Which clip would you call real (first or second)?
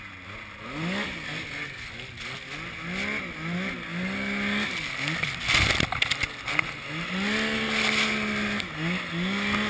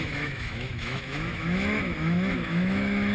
first